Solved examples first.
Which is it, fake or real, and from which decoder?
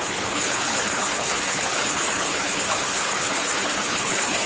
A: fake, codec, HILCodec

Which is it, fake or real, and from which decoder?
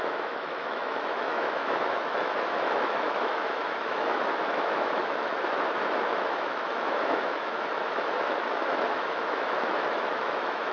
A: fake, autoencoder, DAC-VAE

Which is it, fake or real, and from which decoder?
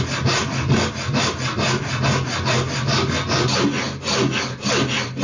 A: real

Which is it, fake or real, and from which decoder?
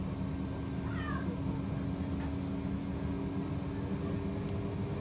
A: real